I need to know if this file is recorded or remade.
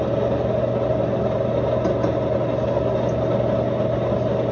recorded